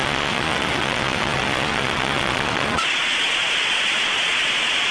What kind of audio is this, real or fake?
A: fake